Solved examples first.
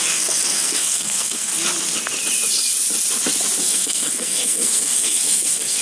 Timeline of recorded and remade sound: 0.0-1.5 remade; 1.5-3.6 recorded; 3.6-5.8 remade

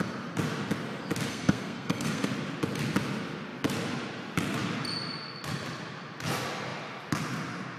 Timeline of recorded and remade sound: 0.0-1.3 recorded; 1.3-2.3 remade; 2.3-7.8 recorded